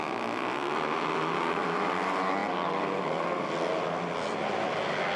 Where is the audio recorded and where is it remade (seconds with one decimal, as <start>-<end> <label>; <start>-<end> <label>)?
0.0-2.4 recorded; 2.4-4.5 remade; 4.5-5.2 recorded